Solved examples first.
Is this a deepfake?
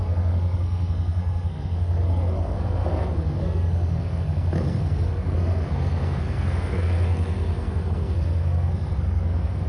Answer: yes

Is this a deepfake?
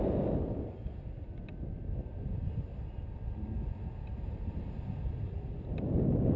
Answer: no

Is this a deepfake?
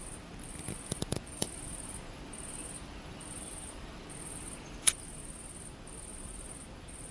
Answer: yes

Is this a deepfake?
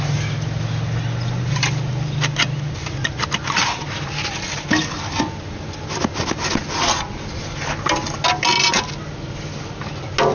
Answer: no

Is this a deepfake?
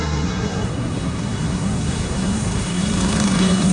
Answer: yes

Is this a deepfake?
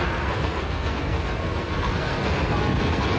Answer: yes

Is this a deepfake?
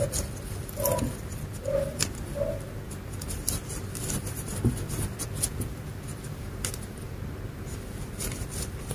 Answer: no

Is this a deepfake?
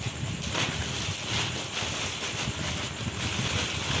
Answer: no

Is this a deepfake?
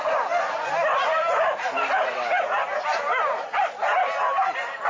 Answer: no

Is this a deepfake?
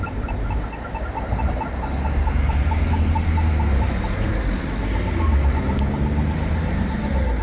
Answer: no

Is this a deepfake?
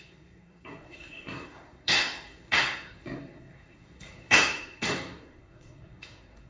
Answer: yes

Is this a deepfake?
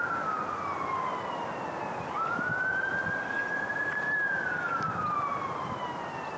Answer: no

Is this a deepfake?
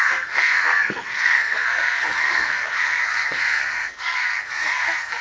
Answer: yes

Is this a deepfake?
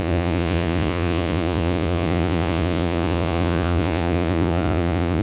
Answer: yes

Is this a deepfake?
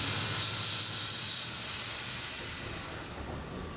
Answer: no